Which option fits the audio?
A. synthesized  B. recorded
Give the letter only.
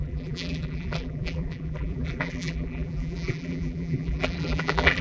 A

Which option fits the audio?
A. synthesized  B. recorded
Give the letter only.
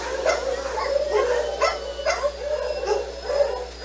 B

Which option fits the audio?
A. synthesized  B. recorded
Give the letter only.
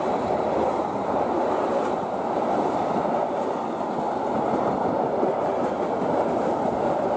A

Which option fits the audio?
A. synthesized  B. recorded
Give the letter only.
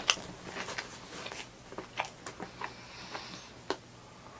B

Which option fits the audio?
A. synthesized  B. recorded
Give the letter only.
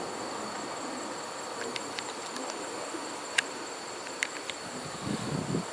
B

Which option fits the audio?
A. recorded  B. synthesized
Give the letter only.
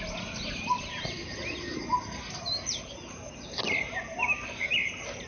A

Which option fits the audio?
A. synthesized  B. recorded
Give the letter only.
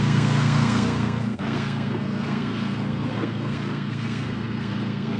A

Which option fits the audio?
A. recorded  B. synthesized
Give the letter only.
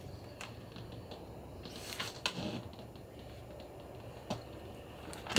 A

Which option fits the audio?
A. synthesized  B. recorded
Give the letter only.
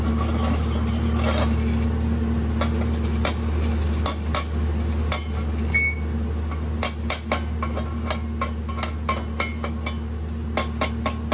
B